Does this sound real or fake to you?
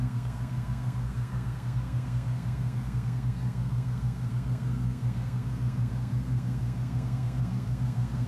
fake